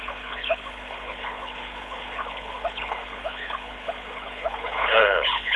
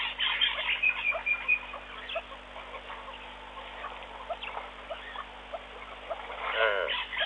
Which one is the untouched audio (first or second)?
second